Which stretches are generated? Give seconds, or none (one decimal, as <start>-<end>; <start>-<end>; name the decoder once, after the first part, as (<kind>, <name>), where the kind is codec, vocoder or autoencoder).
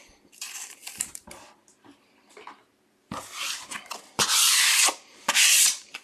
0.0-1.6 (vocoder, BigVGAN v2); 4.0-6.0